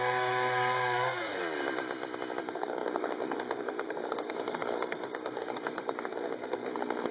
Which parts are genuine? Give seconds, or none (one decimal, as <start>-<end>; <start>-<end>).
1.4-2.4